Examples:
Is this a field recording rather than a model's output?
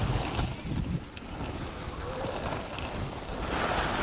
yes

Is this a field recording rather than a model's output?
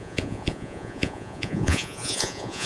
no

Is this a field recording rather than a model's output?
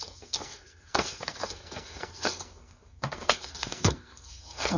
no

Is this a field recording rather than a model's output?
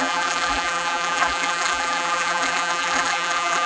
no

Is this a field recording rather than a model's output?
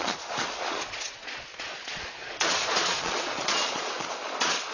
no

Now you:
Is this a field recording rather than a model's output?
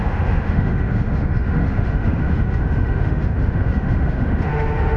no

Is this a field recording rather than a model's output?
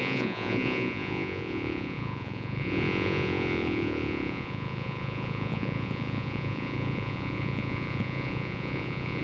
no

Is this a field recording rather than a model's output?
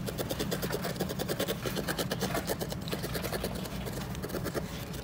yes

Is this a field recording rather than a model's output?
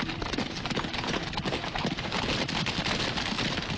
yes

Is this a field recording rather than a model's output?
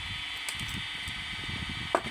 yes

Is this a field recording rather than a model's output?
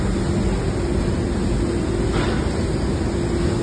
yes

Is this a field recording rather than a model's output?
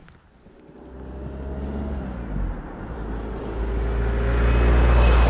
yes